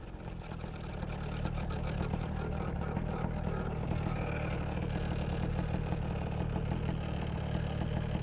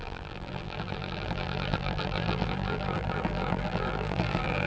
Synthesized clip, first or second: second